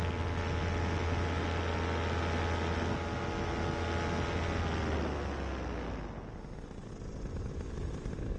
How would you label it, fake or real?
real